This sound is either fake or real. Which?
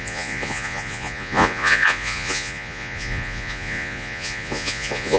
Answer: fake